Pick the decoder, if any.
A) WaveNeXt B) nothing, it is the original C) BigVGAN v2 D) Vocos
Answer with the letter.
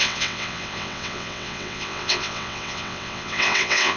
A